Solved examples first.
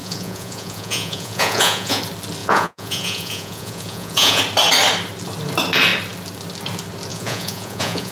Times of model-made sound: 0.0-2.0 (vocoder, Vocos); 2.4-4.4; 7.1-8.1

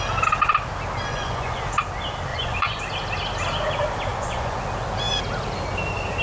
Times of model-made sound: 1.1-1.6 (vocoder, Vocos); 2.3-2.8; 4.1-4.6

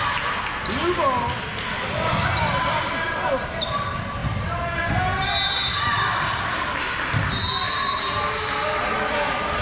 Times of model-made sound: none

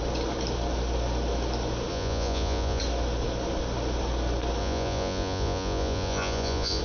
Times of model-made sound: 1.9-2.8 (vocoder, Vocos); 4.6-6.8